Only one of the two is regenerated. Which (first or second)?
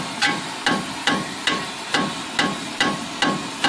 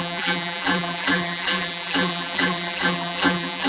second